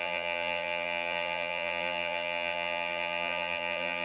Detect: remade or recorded remade